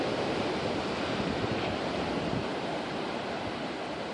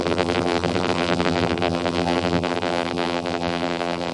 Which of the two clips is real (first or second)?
first